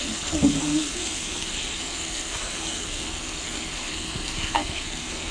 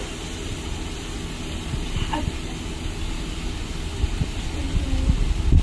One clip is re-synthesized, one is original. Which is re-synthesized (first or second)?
first